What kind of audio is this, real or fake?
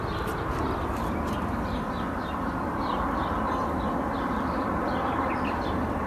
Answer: real